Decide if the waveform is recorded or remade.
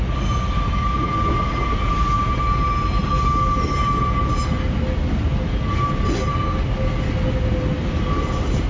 recorded